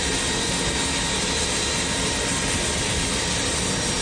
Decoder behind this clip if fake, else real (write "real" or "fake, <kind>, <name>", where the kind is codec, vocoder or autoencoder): real